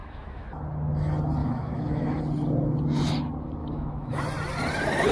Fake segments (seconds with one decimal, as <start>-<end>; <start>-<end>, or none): 0.0-0.5; 1.4-2.2; 3.6-4.2